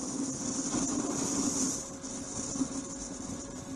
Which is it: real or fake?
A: real